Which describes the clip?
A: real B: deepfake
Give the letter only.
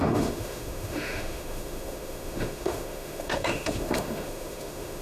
B